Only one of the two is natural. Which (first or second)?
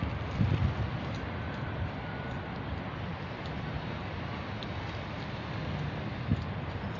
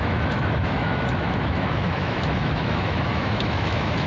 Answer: first